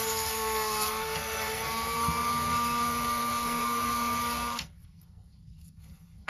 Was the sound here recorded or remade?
remade